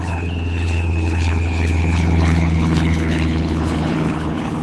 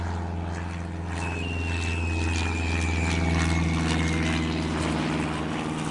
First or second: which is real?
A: second